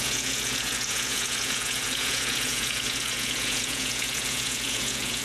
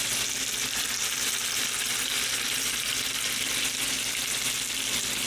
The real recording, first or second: second